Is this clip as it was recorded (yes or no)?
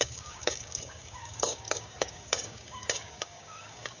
no